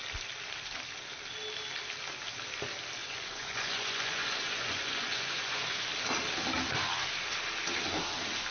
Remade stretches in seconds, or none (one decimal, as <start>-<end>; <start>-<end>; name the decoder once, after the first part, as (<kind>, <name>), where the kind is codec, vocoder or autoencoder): 3.0-5.9 (vocoder, Vocos)